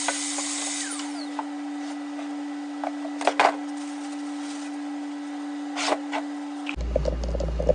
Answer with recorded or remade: recorded